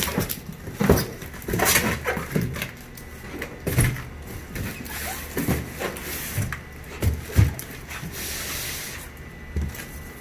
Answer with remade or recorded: recorded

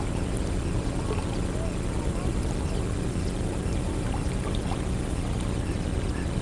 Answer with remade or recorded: recorded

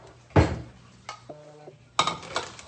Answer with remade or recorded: recorded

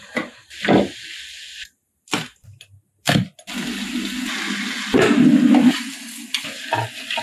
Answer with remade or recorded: recorded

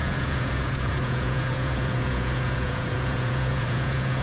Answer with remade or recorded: remade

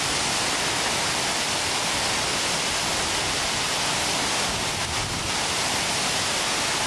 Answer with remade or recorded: recorded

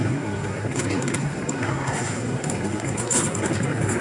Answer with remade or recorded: remade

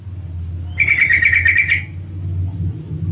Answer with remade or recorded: recorded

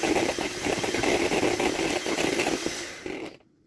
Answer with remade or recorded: recorded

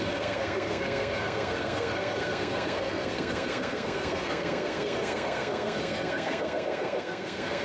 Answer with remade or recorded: remade